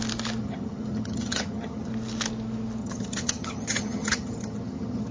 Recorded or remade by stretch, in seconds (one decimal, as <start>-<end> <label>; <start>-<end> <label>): 0.0-0.4 recorded; 0.4-1.9 remade; 1.9-2.8 recorded; 2.8-5.1 remade